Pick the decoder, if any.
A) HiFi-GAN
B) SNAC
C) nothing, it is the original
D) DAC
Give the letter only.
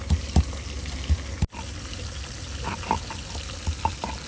C